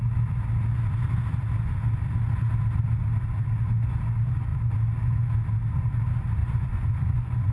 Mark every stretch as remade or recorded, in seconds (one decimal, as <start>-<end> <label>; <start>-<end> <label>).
0.0-6.4 recorded; 6.4-7.5 remade